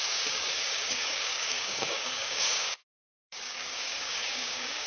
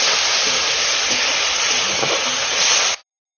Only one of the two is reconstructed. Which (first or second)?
first